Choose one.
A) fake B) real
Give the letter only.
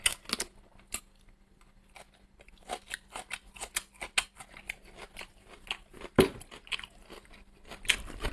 B